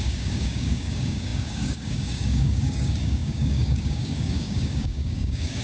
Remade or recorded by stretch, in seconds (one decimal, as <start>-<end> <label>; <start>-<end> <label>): 0.0-5.6 remade

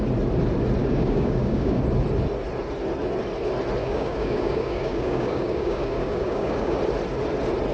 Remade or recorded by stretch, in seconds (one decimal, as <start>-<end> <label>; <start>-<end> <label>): 0.0-0.8 recorded; 0.8-1.8 remade; 1.8-3.8 recorded; 3.8-6.8 remade; 6.8-7.7 recorded

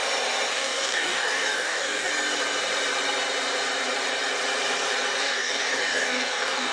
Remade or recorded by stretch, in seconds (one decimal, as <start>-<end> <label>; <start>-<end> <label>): 0.0-0.5 recorded; 0.5-2.1 remade; 2.1-5.2 recorded; 5.2-6.7 remade

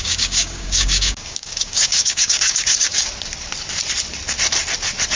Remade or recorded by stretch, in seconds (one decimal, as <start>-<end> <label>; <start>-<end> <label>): 0.0-3.1 remade; 3.1-5.2 recorded

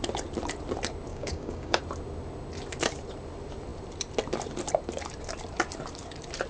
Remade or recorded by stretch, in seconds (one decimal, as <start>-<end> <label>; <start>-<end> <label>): 0.0-1.1 recorded; 1.1-1.8 remade; 1.8-6.5 recorded